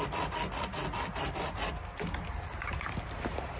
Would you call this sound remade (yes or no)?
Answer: no